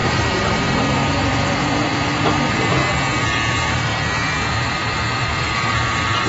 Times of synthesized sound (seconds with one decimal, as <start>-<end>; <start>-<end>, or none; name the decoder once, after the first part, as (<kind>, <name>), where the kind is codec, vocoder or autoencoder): 0.0-2.8 (vocoder, BigVGAN v2); 3.5-3.9; 4.5-6.3